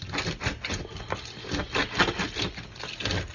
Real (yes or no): yes